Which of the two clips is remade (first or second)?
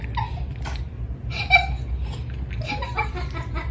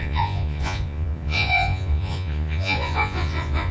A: second